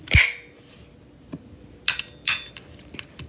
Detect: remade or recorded recorded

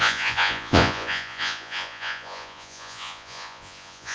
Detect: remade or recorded remade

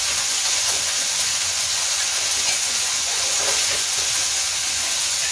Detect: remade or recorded remade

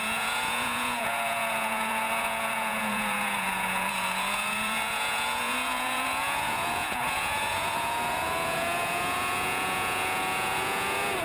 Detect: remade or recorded remade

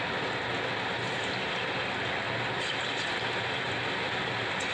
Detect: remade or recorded recorded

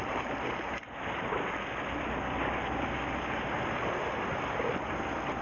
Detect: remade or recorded recorded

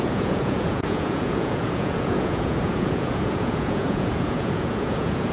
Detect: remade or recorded remade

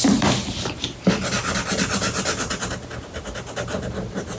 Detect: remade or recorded recorded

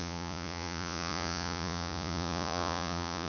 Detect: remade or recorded remade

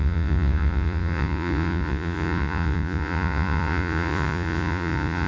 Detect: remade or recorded remade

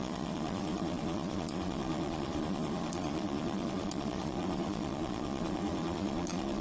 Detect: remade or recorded remade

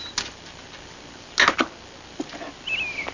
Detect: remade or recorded recorded